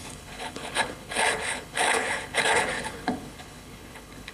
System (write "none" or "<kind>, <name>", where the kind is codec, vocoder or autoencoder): codec, HILCodec